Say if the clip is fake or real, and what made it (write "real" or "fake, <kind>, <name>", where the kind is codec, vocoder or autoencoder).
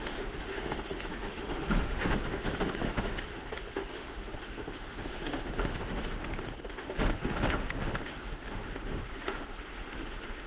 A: fake, autoencoder, DAC-VAE